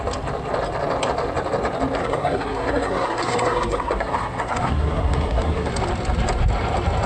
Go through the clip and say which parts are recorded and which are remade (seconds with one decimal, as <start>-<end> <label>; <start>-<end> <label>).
0.0-2.0 recorded; 2.0-5.7 remade; 5.7-7.1 recorded